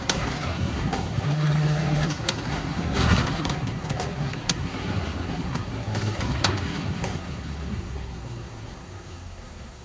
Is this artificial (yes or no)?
yes